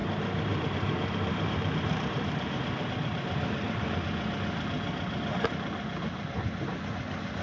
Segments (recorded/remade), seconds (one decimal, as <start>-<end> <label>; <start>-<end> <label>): 0.0-3.8 remade; 3.8-7.4 recorded